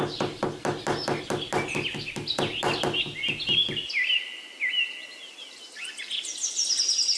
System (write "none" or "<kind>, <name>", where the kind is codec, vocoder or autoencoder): none